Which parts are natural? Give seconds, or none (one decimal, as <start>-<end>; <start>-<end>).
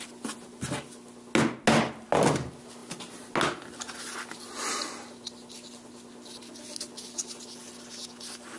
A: 0.0-8.6